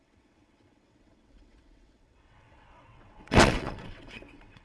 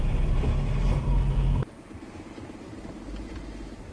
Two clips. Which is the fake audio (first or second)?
first